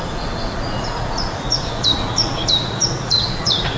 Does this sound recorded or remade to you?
remade